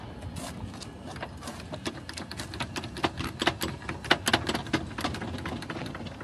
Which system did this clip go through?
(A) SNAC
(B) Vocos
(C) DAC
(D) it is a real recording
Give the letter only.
D